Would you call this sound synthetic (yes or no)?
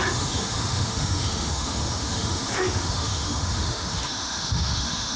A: yes